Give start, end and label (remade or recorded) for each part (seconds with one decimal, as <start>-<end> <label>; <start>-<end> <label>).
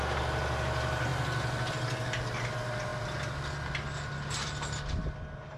0.0-5.6 recorded